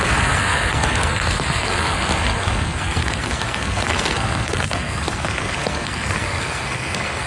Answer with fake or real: fake